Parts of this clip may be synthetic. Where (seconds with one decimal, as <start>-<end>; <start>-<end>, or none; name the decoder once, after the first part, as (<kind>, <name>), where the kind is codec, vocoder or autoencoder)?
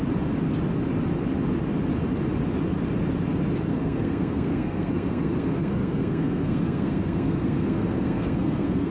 3.7-8.9 (codec, SNAC)